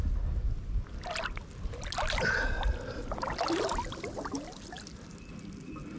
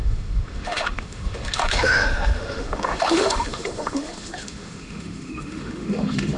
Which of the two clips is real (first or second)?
first